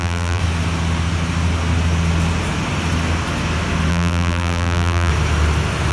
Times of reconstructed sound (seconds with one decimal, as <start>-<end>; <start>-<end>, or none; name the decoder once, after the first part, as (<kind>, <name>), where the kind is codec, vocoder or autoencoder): 0.0-0.4 (vocoder, BigVGAN v2); 3.9-5.1